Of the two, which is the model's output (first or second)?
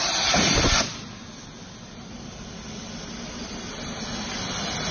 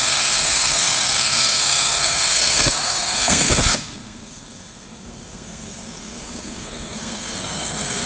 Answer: second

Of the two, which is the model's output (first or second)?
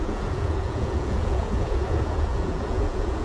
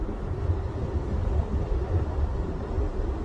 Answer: first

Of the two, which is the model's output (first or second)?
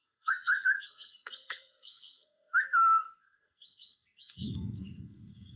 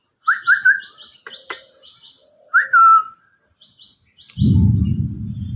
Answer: first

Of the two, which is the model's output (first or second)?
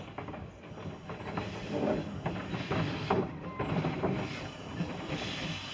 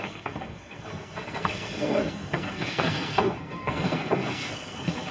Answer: second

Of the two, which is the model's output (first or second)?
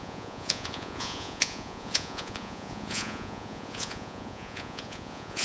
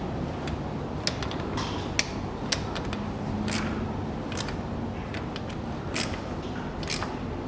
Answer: first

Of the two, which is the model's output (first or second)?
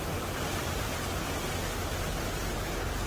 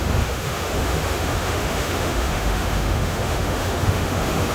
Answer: second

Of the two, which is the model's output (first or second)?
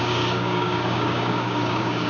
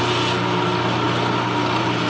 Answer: first